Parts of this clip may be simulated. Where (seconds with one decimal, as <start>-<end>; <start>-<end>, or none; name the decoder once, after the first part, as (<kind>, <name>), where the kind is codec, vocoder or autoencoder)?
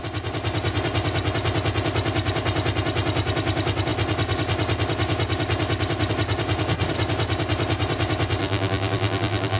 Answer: 8.4-9.6 (vocoder, BigVGAN v2)